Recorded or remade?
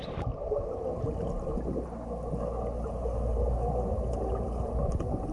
recorded